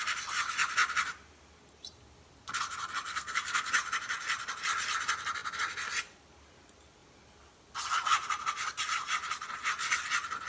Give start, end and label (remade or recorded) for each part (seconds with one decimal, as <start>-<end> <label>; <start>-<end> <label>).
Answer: 0.0-3.1 recorded; 3.1-3.7 remade; 3.7-10.5 recorded